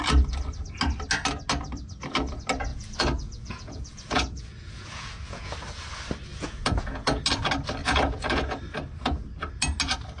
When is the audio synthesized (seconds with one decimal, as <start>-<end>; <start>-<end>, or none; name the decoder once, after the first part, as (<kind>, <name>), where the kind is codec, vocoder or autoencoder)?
2.7-5.5 (vocoder, Vocos); 6.3-7.2; 7.8-8.6

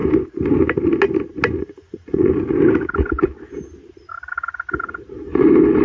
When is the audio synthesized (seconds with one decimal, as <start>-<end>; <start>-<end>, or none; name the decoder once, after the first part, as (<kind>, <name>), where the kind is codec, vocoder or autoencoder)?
1.6-2.3 (vocoder, Vocos)

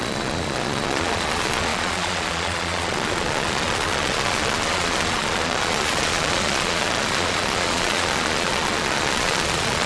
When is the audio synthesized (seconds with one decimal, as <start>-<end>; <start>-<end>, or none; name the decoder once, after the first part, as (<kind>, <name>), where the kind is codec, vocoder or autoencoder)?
0.0-9.9 (vocoder, Vocos)

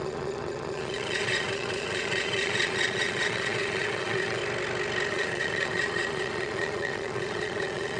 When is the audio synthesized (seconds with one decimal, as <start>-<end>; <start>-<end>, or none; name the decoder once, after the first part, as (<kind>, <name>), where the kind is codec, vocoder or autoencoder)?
0.0-4.4 (vocoder, Vocos); 5.1-8.0

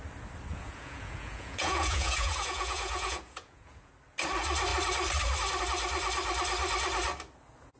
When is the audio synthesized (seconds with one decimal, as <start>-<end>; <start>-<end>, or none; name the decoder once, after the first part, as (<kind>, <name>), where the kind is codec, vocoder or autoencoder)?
0.5-3.9 (vocoder, Vocos)

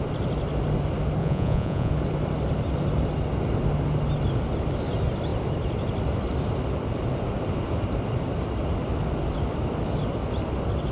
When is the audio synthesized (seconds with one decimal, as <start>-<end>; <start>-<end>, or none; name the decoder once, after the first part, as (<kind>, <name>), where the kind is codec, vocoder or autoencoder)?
1.2-1.9 (vocoder, Vocos)

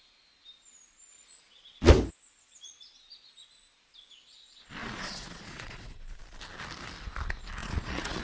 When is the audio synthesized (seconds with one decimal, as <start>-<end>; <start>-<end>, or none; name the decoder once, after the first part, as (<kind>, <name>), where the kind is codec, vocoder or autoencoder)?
1.1-1.9 (vocoder, Vocos); 4.8-6.0; 7.6-8.2

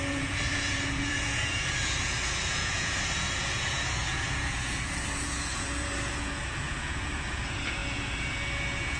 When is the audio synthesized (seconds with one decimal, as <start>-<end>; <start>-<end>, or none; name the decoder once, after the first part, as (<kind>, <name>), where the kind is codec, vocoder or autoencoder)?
0.0-9.0 (vocoder, Vocos)